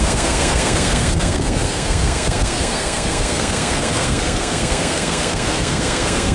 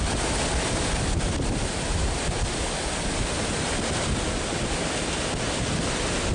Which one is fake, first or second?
first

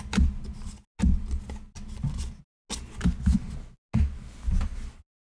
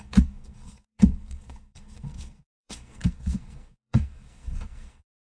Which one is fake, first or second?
second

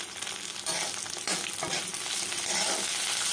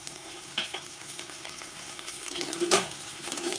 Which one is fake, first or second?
second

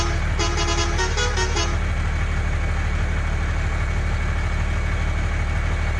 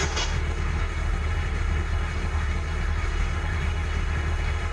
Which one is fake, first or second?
second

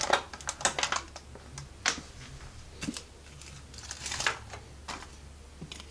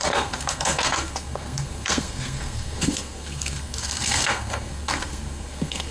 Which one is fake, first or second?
second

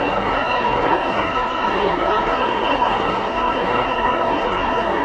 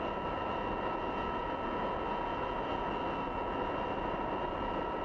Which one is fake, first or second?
first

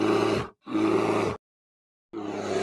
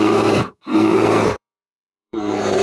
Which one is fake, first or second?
second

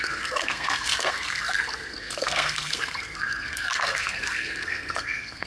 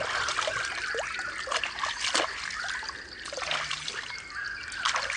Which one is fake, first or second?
first